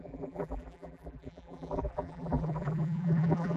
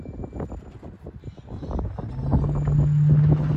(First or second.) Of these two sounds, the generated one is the first